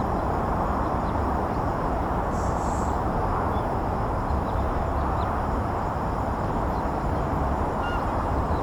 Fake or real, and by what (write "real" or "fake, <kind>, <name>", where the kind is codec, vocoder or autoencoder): fake, vocoder, BigVGAN v2